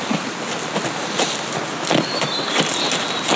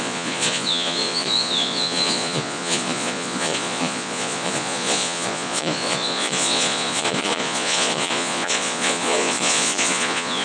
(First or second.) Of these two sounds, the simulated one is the second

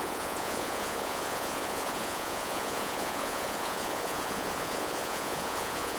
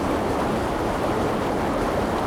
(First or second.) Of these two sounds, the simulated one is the first